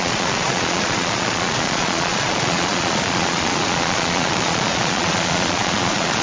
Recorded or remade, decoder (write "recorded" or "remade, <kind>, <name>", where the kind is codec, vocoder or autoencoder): remade, vocoder, Vocos